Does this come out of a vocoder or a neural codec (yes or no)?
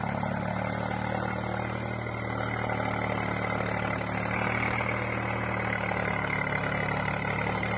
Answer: no